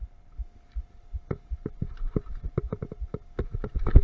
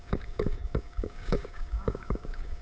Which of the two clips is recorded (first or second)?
first